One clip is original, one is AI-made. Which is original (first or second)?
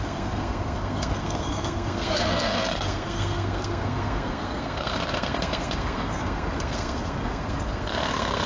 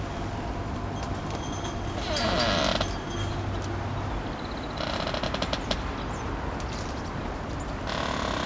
second